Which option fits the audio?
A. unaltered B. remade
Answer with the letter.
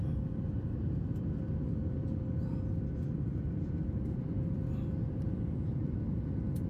B